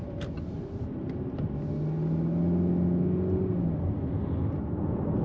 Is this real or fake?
real